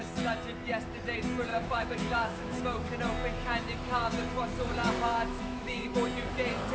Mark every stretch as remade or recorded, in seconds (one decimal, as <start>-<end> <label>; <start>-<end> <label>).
0.0-1.5 recorded; 1.5-2.6 remade; 2.6-5.3 recorded; 5.3-5.9 remade; 5.9-6.7 recorded